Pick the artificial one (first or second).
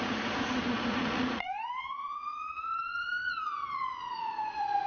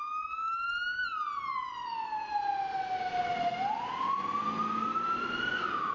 first